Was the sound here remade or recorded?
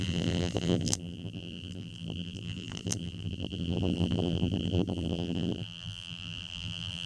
remade